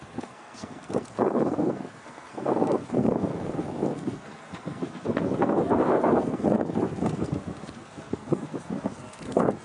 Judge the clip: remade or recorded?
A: remade